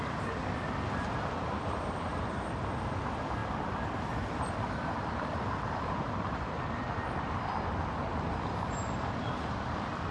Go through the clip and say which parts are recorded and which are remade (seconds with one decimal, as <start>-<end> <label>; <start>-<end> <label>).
0.0-10.1 remade